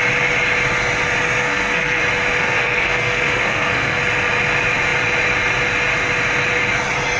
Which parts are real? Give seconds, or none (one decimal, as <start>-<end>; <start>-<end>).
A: 0.0-1.4; 2.0-2.4; 4.0-7.2